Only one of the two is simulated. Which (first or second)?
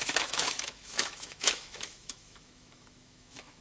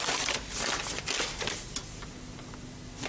first